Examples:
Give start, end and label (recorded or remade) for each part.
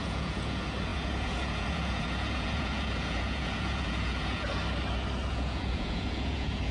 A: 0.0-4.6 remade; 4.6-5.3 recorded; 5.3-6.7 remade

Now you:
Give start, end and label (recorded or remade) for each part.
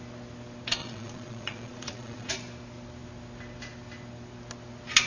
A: 0.0-0.8 recorded; 0.8-2.3 remade; 2.3-5.1 recorded